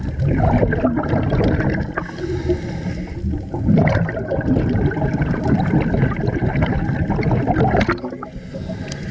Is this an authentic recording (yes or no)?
yes